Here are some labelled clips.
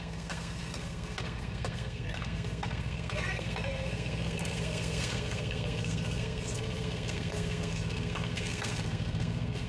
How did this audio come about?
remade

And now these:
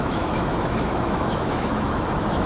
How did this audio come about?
remade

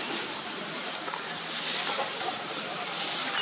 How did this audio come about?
recorded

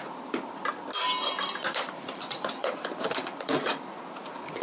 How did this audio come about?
remade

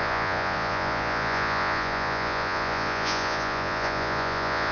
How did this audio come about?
remade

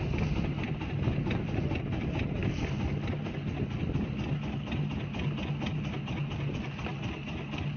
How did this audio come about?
recorded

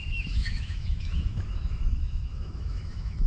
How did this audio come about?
remade